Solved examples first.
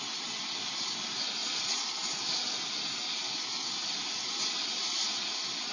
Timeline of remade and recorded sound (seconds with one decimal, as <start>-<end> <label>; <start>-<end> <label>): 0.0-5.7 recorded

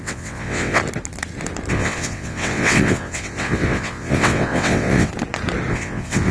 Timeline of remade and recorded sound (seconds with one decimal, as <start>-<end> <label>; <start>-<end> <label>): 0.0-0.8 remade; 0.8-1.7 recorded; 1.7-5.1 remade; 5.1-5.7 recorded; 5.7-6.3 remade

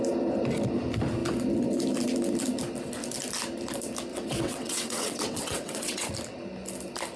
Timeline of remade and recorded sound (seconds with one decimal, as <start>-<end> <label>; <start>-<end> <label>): 0.0-4.1 recorded; 4.1-6.1 remade; 6.1-7.2 recorded

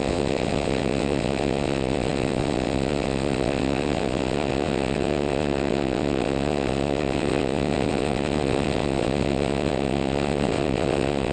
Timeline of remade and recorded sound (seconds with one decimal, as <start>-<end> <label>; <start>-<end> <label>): 0.0-11.3 remade

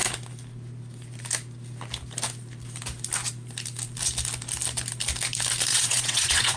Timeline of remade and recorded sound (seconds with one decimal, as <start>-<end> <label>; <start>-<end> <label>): 0.0-5.7 recorded; 5.7-6.6 remade

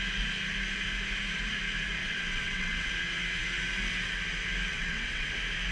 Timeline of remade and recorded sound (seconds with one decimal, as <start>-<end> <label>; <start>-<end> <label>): 0.0-2.0 recorded; 2.0-2.9 remade; 2.9-4.7 recorded; 4.7-5.3 remade; 5.3-5.7 recorded

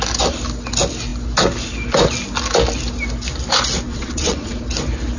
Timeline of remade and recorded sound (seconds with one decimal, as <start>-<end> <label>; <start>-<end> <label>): 0.0-3.9 recorded; 3.9-4.5 remade; 4.5-5.2 recorded

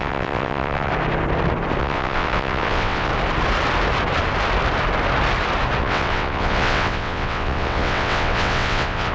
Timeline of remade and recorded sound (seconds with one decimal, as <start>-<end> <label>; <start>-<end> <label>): 0.0-0.9 remade; 0.9-1.8 recorded; 1.8-3.1 remade; 3.1-5.8 recorded; 5.8-9.1 remade